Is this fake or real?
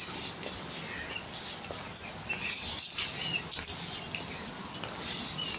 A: real